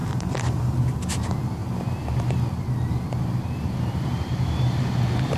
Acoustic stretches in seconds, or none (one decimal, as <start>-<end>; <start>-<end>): 1.1-1.6; 4.8-5.4